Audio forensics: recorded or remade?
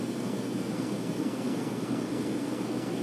remade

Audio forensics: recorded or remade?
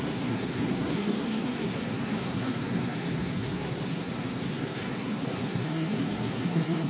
remade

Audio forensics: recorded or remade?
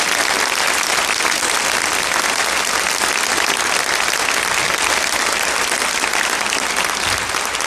recorded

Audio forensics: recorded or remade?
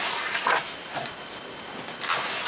recorded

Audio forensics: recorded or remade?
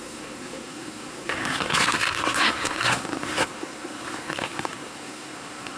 remade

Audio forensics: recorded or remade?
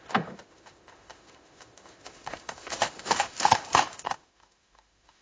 remade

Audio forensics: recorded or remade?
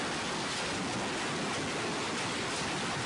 recorded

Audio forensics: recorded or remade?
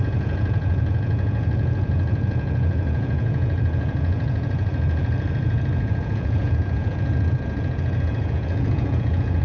remade